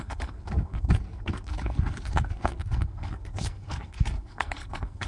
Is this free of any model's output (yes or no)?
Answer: no